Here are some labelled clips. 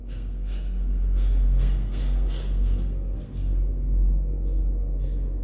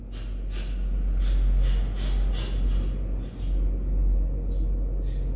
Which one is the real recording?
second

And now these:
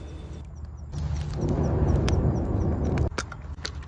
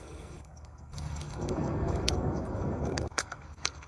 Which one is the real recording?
first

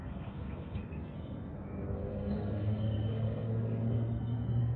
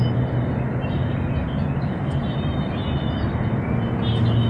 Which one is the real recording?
second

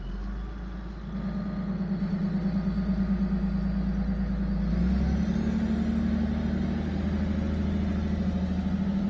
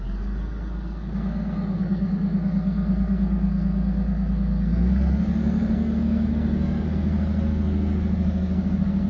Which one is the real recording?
first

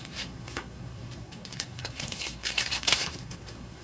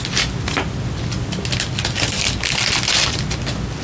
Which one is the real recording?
second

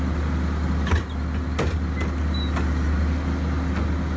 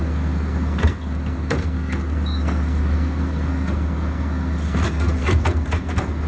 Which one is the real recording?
first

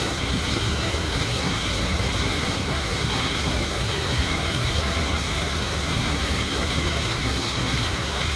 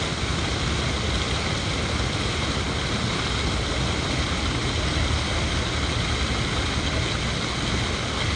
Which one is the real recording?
second